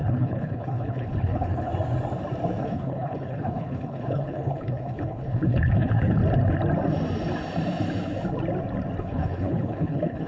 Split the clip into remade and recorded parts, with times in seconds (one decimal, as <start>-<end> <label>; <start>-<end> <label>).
0.0-1.7 remade; 1.7-2.6 recorded; 2.6-6.2 remade; 6.2-9.0 recorded; 9.0-10.3 remade